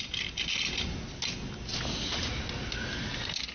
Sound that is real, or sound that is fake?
real